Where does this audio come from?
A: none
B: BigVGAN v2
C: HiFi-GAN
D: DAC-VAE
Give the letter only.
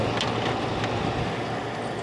A